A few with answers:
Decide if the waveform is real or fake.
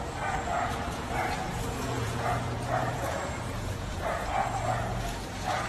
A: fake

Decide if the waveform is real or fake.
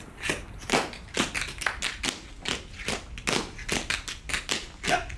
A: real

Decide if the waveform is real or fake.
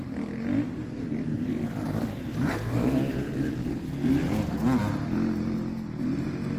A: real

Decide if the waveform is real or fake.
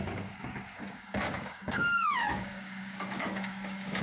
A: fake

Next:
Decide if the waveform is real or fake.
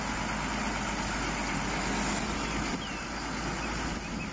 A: real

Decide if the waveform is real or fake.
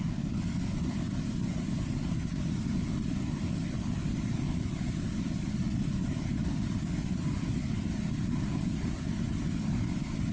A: real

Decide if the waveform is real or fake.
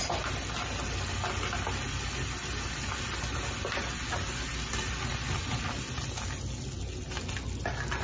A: real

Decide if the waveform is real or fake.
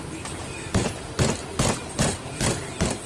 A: real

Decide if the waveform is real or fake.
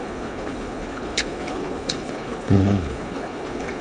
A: fake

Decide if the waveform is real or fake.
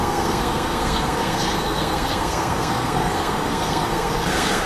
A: fake